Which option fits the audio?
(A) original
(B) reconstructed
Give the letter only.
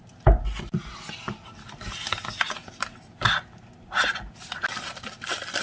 A